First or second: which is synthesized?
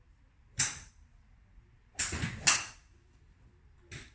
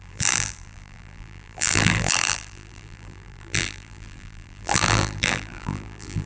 second